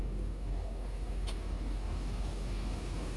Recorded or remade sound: remade